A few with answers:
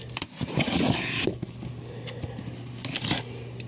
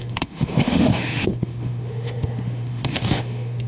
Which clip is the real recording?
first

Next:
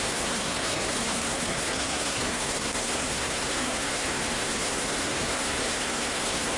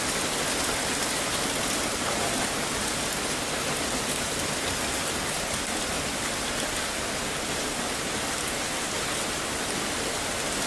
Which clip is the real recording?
second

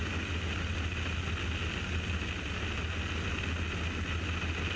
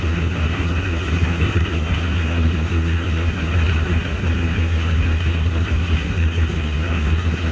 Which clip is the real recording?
first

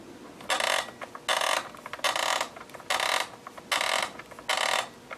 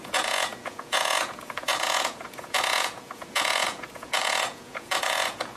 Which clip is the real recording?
first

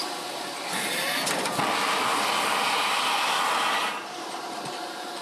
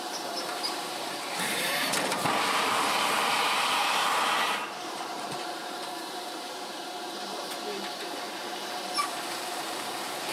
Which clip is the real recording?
first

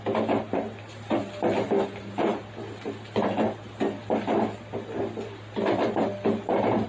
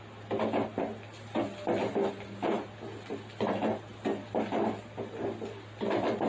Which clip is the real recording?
second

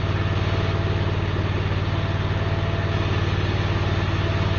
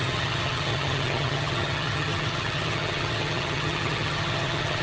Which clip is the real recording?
first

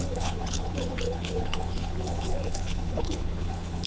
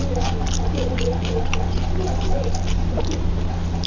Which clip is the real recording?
second